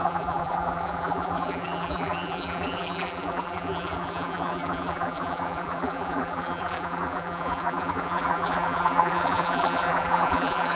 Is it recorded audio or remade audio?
remade